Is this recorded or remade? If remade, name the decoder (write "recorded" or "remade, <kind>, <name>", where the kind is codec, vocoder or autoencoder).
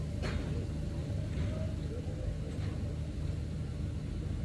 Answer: recorded